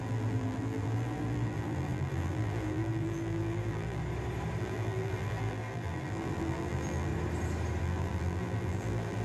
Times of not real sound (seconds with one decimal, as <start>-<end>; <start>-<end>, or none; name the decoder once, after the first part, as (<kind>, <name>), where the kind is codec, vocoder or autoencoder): 0.0-4.0 (vocoder, BigVGAN v2); 4.6-7.1; 7.8-9.2

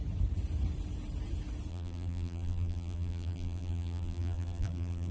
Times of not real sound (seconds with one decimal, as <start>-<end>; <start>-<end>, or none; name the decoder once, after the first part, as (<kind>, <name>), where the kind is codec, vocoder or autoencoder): 1.7-5.1 (vocoder, BigVGAN v2)

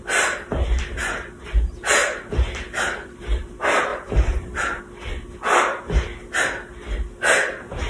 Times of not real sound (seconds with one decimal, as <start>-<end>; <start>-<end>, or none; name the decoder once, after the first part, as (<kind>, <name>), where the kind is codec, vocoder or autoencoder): 2.0-3.1 (vocoder, BigVGAN v2); 3.9-4.8

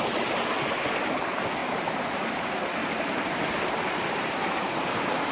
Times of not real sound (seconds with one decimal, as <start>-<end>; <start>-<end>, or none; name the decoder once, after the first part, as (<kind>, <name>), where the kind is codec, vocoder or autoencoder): 1.6-2.2 (vocoder, BigVGAN v2); 2.8-5.3

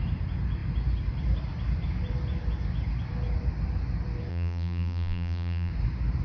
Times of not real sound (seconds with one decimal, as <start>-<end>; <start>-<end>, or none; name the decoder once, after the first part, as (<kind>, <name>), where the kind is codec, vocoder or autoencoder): 4.3-5.7 (vocoder, BigVGAN v2)

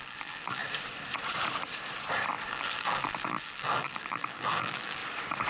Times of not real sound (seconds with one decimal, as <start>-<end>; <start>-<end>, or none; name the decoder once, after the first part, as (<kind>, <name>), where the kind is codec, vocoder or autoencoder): 0.0-0.6 (vocoder, BigVGAN v2); 2.5-5.0

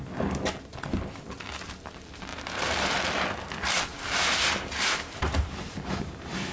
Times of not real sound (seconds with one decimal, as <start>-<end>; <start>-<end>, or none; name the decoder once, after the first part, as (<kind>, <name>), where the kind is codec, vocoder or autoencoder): 2.3-3.0 (vocoder, BigVGAN v2); 3.9-6.5